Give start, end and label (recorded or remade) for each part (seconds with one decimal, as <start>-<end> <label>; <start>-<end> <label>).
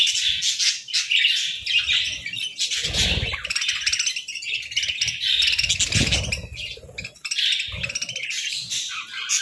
0.0-9.4 recorded